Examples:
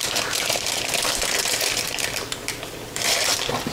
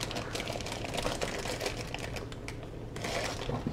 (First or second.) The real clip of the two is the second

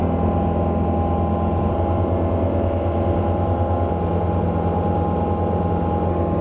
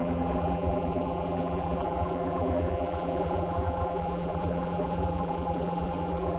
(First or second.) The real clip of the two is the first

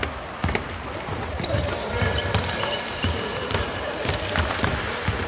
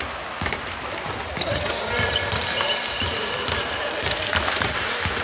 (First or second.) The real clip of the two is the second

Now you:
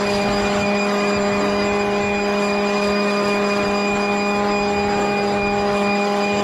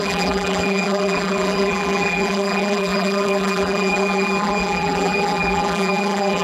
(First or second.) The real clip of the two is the first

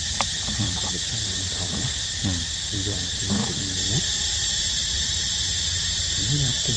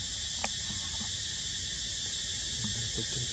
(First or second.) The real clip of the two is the second